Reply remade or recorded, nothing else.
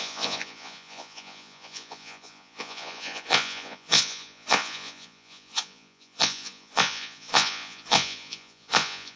remade